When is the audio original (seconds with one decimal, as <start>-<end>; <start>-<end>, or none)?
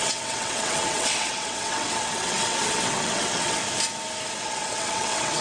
3.6-4.4